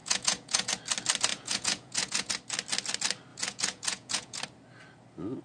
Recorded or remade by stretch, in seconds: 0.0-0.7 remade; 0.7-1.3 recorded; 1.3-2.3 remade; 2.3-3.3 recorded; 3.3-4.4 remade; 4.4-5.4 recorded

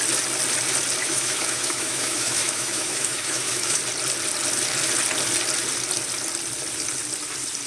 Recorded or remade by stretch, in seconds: 0.0-1.0 recorded; 1.0-3.8 remade; 3.8-7.7 recorded

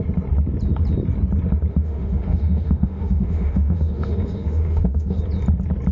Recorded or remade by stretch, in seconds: 0.0-1.7 recorded; 1.7-5.2 remade; 5.2-5.9 recorded

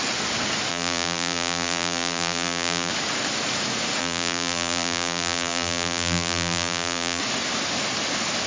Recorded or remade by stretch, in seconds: 0.0-0.7 recorded; 0.7-2.9 remade; 2.9-4.0 recorded; 4.0-7.2 remade; 7.2-8.5 recorded